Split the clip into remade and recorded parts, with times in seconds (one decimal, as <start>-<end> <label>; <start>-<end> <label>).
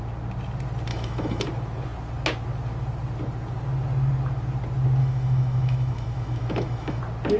0.0-0.9 recorded; 0.9-1.4 remade; 1.4-5.0 recorded; 5.0-7.0 remade; 7.0-7.4 recorded